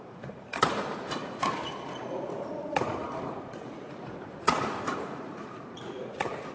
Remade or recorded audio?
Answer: remade